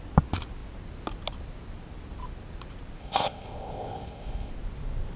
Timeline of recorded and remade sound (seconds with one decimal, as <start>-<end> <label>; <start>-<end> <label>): 0.0-3.0 recorded; 3.0-4.5 remade; 4.5-5.2 recorded